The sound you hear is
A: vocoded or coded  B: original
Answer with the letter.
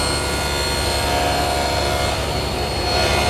B